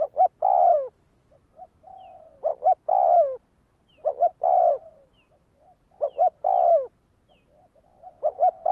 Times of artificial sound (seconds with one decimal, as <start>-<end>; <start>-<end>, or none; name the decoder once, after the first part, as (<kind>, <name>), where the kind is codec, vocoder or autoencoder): none